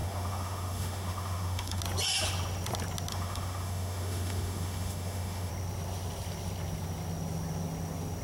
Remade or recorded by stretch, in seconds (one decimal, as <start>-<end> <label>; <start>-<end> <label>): 0.0-1.8 remade; 1.8-3.1 recorded; 3.1-5.5 remade; 5.5-8.2 recorded

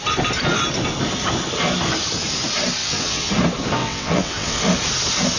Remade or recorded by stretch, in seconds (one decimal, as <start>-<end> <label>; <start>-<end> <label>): 0.0-2.8 recorded; 2.8-3.3 remade; 3.3-3.8 recorded; 3.8-4.6 remade; 4.6-5.4 recorded